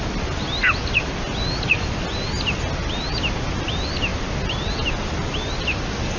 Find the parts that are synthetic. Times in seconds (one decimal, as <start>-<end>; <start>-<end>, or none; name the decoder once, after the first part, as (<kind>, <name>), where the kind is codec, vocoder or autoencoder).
none

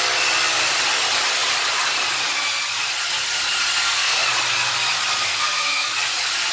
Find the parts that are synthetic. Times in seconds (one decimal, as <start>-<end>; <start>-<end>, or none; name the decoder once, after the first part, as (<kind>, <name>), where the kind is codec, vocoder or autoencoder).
3.8-4.3 (codec, SNAC); 5.3-5.9

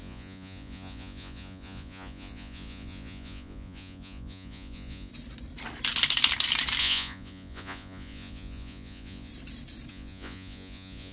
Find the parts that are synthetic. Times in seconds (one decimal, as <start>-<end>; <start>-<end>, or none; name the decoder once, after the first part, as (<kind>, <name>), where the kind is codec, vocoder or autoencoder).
0.0-5.1 (vocoder, Vocos); 6.8-9.3; 9.9-11.1

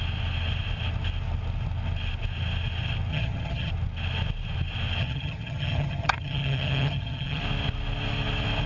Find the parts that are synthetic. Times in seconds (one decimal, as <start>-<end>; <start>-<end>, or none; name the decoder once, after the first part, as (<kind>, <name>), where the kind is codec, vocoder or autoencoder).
3.1-3.7 (vocoder, HiFi-GAN); 5.0-7.4